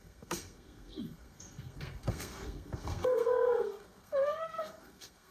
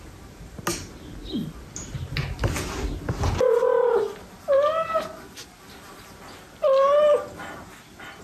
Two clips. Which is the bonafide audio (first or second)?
second